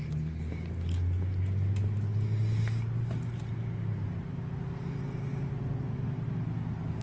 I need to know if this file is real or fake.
real